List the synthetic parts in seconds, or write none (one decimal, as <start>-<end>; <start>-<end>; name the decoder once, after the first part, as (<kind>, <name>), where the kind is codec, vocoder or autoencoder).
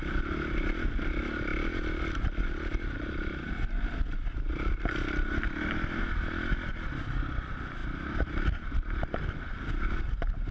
none